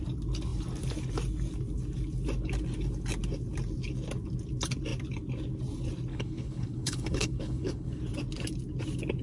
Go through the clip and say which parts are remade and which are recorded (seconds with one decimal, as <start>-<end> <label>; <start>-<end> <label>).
0.0-6.1 recorded; 6.1-8.0 remade; 8.0-9.2 recorded